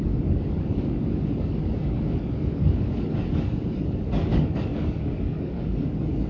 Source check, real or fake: fake